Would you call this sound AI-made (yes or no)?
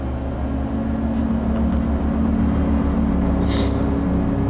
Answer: no